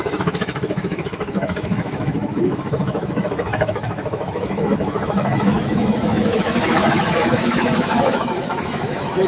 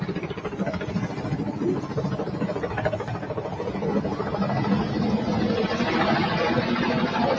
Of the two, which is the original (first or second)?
second